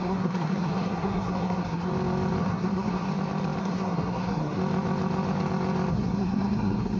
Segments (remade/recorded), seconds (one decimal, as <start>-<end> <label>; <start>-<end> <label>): 0.0-1.9 remade; 1.9-2.4 recorded; 2.4-3.1 remade; 3.1-3.6 recorded; 3.6-4.6 remade; 4.6-5.9 recorded; 5.9-7.0 remade